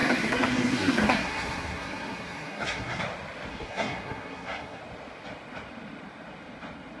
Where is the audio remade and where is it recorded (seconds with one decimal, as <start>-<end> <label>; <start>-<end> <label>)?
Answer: 0.0-3.0 remade; 3.0-3.5 recorded; 3.5-4.8 remade; 4.8-7.0 recorded